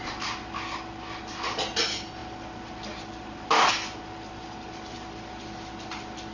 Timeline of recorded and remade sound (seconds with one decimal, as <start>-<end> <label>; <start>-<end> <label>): 0.0-6.3 recorded